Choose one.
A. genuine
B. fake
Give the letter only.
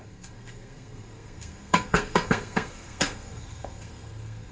B